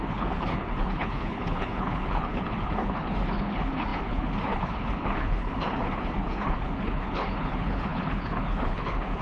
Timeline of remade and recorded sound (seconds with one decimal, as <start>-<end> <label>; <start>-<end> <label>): 0.0-9.2 remade